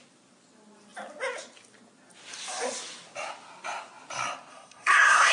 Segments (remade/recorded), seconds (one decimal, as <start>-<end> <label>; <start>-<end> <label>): 0.0-4.5 recorded; 4.5-5.3 remade